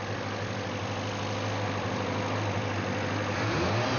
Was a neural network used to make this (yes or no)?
no